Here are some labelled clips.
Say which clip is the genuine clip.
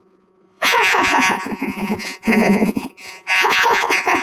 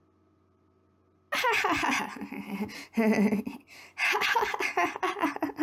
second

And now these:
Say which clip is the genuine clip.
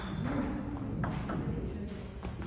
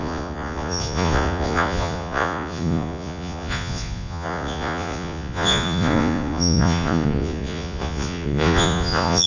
first